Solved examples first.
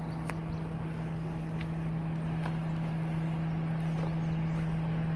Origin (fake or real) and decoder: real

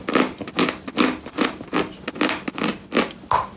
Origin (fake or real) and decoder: real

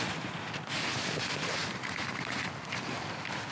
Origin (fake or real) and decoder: real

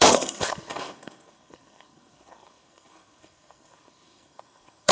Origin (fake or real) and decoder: fake, codec, SNAC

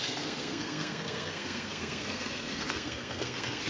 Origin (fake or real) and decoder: fake, codec, SNAC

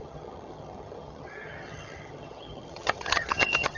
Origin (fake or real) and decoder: fake, vocoder, HiFi-GAN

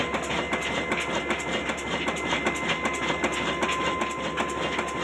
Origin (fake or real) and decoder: real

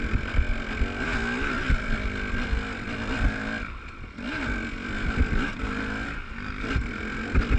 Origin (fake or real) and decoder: real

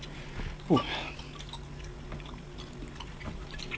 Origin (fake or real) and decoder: real